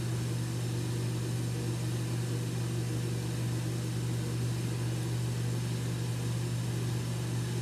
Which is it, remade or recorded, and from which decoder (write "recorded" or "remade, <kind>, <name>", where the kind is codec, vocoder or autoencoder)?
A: recorded